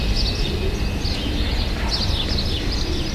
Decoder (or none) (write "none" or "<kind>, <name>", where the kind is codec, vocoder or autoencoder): none